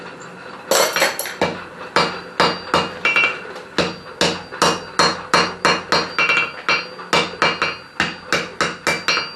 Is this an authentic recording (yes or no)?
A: yes